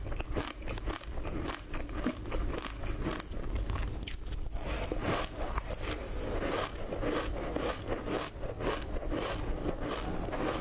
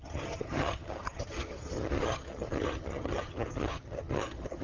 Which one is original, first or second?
first